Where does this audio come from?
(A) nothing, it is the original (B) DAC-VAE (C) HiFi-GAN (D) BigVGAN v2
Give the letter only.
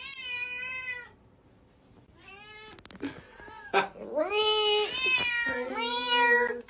A